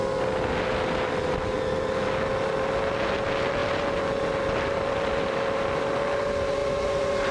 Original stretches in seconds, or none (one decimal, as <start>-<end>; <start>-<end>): 0.0-7.3